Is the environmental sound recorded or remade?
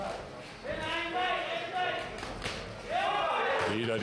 recorded